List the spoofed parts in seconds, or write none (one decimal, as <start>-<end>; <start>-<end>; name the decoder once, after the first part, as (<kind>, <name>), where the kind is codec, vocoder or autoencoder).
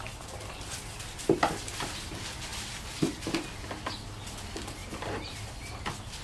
4.8-5.4 (vocoder, BigVGAN v2)